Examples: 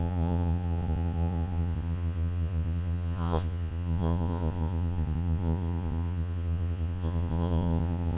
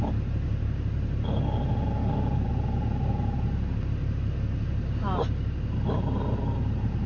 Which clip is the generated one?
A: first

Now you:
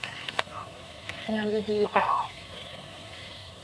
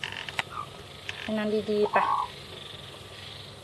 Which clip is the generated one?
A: first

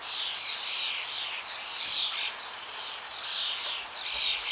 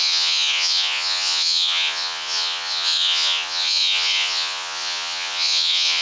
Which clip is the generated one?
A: second